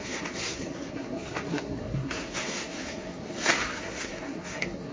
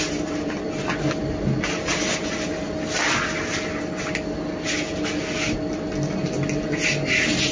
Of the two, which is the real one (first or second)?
second